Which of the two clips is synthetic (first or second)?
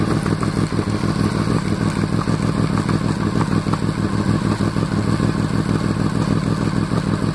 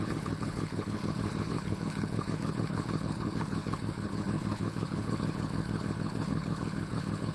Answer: second